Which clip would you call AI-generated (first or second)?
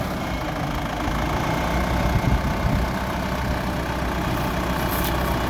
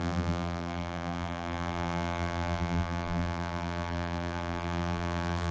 second